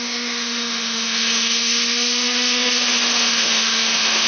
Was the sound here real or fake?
fake